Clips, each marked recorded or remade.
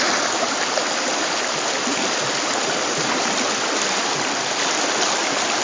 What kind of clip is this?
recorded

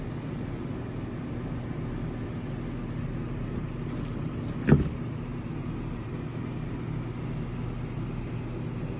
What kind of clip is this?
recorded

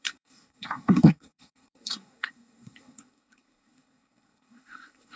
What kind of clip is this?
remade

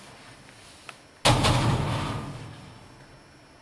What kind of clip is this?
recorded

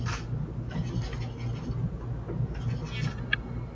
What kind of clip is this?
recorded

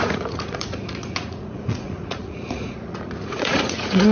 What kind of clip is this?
remade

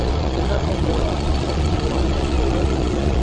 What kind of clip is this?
remade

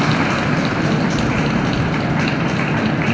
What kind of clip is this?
recorded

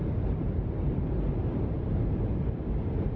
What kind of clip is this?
recorded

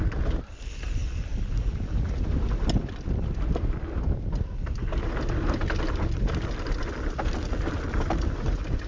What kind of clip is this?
recorded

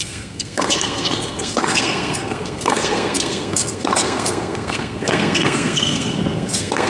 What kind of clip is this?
remade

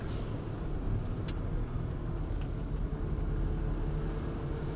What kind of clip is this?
recorded